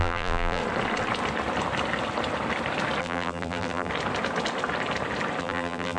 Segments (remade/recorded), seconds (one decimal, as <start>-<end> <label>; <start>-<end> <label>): 0.0-0.6 remade; 0.6-3.0 recorded; 3.0-3.9 remade; 3.9-5.4 recorded; 5.4-6.0 remade